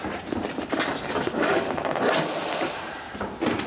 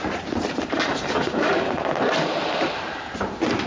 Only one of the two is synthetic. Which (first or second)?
second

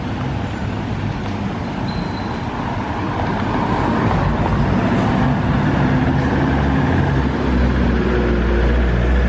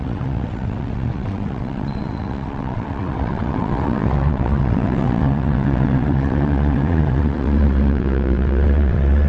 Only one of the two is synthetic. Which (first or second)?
second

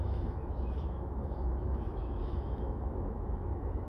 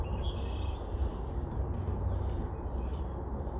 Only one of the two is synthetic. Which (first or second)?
first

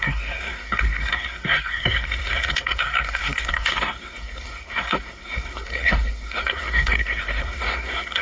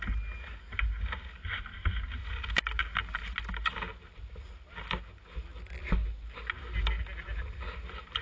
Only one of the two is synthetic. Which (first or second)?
first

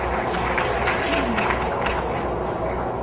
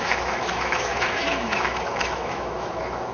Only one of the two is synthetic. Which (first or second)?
second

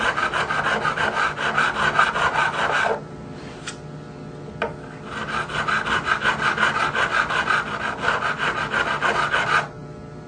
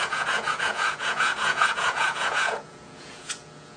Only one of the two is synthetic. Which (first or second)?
second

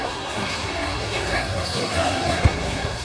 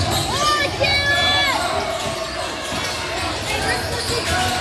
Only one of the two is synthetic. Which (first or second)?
first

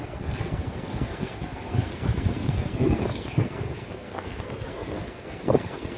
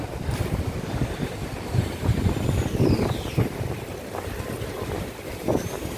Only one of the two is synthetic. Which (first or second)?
first